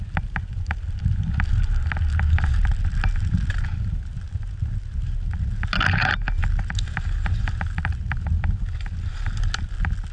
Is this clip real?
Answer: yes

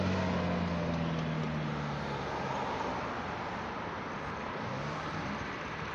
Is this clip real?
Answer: yes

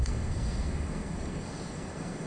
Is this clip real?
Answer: no